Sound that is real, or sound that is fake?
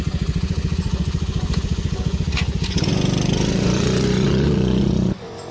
fake